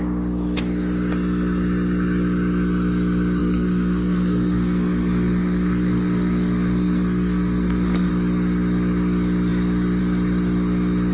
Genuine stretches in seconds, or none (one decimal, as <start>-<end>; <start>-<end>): 0.0-3.4; 8.1-11.1